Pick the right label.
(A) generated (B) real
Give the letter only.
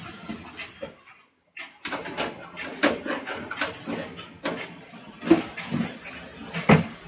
B